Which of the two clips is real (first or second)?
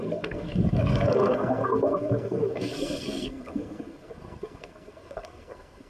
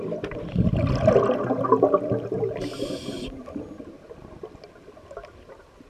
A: second